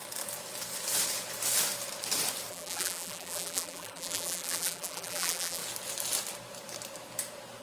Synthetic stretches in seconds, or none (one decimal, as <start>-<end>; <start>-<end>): 2.5-5.6